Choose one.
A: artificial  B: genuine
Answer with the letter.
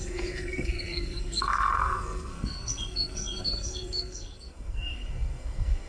A